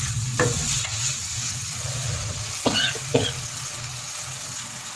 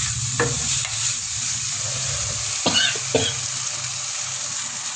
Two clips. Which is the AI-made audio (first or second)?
first